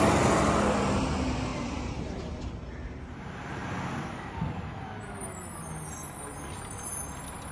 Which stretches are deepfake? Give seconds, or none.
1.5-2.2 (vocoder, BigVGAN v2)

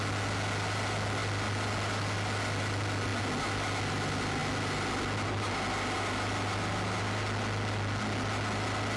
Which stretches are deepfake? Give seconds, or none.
none